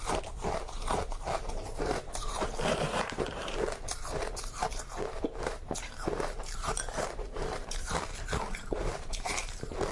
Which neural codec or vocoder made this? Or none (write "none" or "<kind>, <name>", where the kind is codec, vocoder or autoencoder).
vocoder, BigVGAN v2